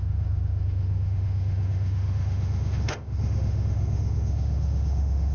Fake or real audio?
fake